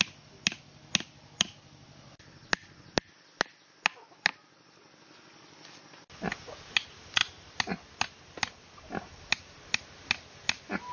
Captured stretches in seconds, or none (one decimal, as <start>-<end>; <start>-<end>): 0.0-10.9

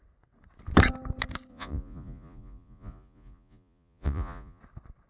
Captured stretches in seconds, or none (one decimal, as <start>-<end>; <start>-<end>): 0.0-1.5; 4.6-5.1

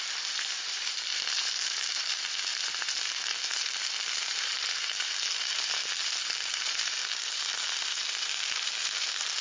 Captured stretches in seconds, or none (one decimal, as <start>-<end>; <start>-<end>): 7.0-8.5

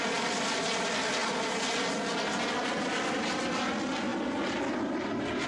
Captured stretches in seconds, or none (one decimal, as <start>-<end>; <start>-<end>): 0.0-5.5

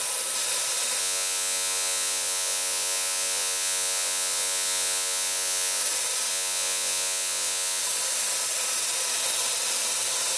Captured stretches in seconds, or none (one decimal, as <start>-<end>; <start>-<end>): 0.0-1.0; 5.8-6.3; 7.8-10.4

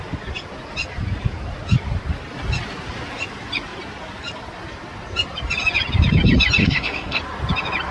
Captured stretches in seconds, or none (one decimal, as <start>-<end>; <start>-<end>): 0.0-6.6; 7.2-7.9

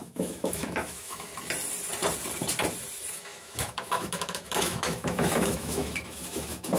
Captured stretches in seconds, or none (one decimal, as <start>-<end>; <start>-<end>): 1.3-3.1